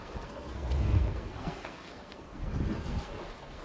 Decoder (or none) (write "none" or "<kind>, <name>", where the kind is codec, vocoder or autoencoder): codec, SNAC